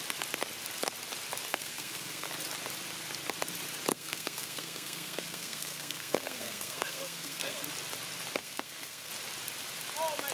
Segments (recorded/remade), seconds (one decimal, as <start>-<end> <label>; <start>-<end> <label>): 0.0-1.5 recorded; 1.5-2.3 remade; 2.3-3.9 recorded; 3.9-7.6 remade; 7.6-8.4 recorded; 8.4-9.1 remade; 9.1-10.3 recorded